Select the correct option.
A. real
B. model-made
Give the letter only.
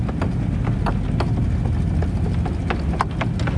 A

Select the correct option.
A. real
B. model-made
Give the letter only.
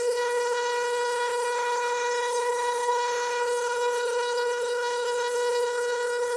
B